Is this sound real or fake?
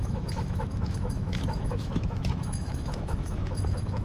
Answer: fake